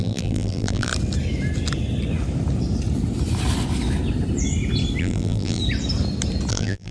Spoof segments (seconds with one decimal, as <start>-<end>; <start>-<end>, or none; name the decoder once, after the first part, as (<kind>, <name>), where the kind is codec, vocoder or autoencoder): 0.0-0.9 (vocoder, BigVGAN v2); 5.0-5.6; 6.5-6.9